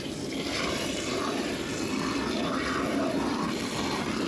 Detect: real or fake fake